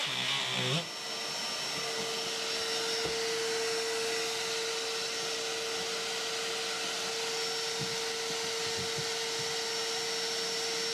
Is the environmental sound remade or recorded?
recorded